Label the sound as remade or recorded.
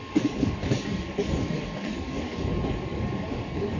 remade